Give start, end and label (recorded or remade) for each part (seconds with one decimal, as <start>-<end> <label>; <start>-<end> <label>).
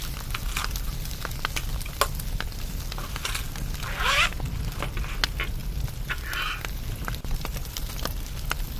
0.0-8.8 recorded